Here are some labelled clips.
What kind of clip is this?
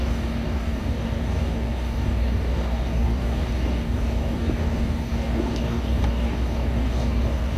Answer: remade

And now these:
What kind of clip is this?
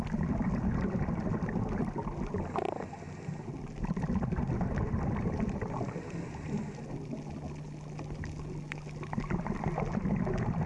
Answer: recorded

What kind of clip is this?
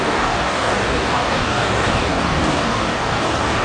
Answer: remade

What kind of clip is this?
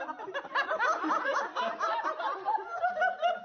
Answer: recorded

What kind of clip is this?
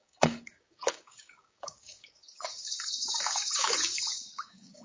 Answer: remade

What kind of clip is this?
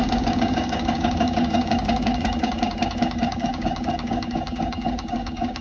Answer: remade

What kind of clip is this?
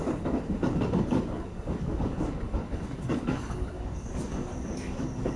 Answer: remade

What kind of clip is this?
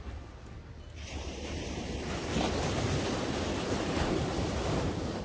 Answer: recorded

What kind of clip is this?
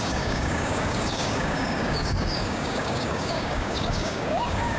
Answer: remade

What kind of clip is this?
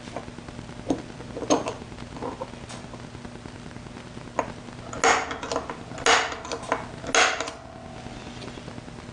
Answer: recorded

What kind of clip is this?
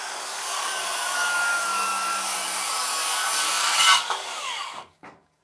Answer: remade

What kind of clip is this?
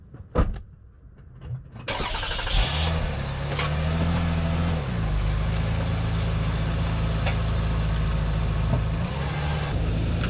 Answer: recorded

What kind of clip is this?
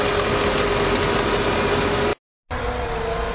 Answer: recorded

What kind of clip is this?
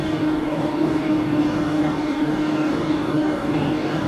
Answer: remade